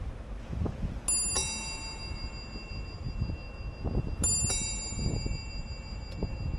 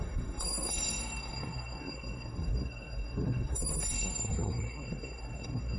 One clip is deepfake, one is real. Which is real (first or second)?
first